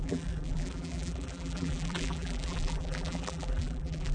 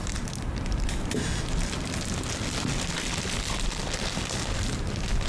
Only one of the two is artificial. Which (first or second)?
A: first